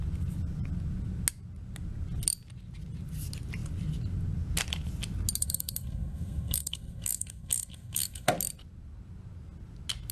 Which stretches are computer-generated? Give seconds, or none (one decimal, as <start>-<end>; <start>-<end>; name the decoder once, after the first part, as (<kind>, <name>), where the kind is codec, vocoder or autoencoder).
5.4-8.3 (codec, SNAC)